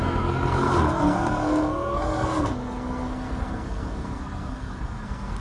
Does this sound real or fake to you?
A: fake